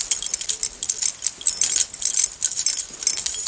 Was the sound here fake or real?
real